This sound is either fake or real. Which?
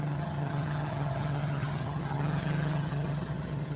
fake